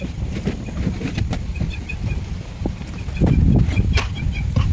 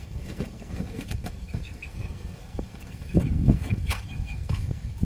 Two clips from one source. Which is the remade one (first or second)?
second